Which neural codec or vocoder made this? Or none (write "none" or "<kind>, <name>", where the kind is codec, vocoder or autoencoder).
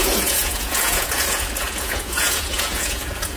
vocoder, Vocos